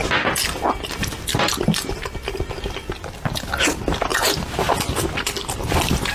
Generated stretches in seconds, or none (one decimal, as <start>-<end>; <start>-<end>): 4.1-4.7